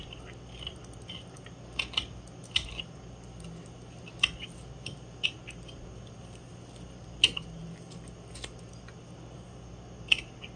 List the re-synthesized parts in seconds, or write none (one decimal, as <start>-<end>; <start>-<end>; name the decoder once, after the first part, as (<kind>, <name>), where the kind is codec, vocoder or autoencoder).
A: none